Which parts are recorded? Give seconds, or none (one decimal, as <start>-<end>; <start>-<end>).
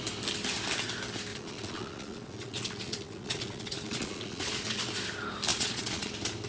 0.0-1.3; 4.8-5.5; 6.1-6.5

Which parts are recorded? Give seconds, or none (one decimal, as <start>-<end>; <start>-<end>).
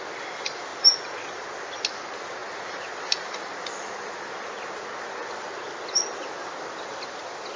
0.0-7.6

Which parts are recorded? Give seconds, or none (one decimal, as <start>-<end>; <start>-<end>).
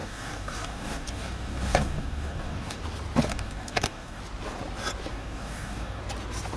2.8-3.3; 4.2-5.1; 6.0-6.6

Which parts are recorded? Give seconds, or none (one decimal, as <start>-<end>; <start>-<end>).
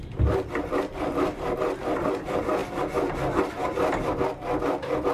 0.0-5.1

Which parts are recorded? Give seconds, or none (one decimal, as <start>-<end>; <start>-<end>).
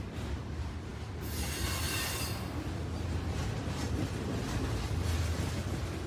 0.0-6.1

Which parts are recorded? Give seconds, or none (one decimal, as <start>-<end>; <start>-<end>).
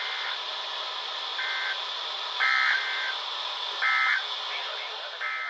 1.3-1.9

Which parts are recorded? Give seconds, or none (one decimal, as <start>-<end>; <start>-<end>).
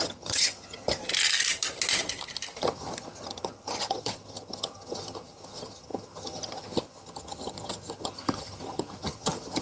1.0-2.6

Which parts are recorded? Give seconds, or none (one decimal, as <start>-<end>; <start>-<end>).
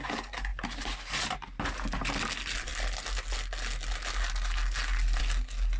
0.0-0.5; 2.2-5.8